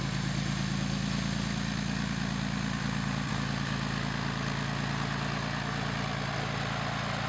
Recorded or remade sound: recorded